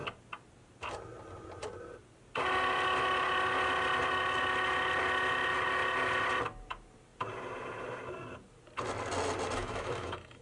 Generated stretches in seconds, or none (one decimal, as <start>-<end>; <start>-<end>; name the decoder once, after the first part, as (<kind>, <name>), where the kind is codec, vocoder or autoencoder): 9.6-10.4 (autoencoder, DAC-VAE)